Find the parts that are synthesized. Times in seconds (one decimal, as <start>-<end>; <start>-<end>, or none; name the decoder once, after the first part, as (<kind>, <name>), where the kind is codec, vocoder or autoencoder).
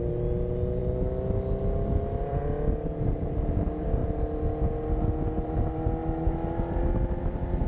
none